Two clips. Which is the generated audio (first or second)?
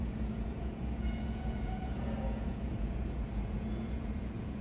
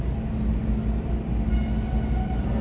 first